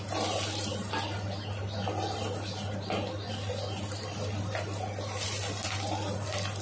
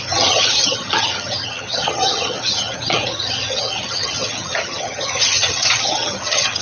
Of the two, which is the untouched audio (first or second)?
first